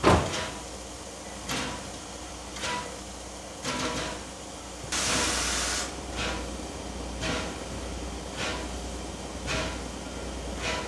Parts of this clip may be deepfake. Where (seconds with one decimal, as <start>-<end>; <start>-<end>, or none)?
none